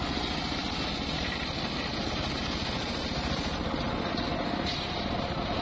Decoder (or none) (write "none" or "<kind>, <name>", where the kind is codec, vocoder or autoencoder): none